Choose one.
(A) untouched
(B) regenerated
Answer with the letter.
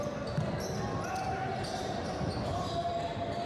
A